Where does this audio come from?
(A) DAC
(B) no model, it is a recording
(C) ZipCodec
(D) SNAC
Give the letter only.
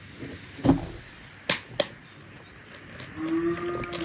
B